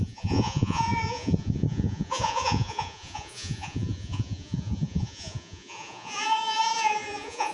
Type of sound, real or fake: fake